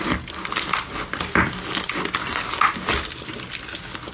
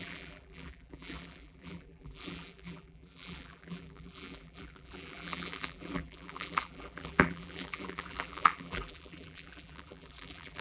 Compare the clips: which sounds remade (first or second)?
second